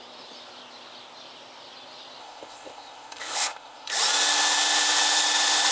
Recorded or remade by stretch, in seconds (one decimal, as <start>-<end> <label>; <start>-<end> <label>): 0.0-2.2 recorded; 2.2-3.9 remade; 3.9-5.7 recorded